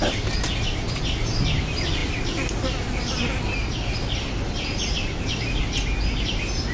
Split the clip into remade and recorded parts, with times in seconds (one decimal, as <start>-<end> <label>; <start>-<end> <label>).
0.0-6.7 recorded